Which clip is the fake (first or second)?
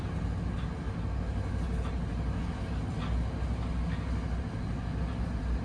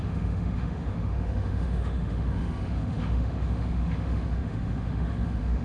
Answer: second